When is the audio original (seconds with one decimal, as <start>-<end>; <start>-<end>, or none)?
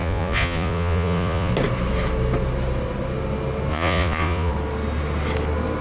1.5-3.7; 4.5-5.8